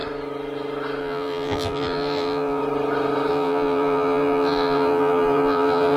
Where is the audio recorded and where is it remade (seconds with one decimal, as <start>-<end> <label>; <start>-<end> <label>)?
0.0-1.0 recorded; 1.0-2.6 remade; 2.6-3.3 recorded; 3.3-6.0 remade